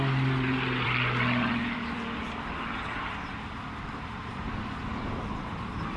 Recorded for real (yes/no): no